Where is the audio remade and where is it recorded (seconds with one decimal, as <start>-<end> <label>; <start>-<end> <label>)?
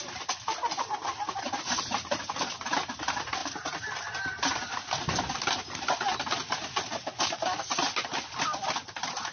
0.0-9.3 recorded